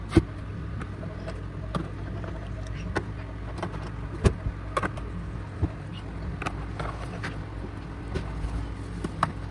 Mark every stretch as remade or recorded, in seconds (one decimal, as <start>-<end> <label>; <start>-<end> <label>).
0.0-9.5 recorded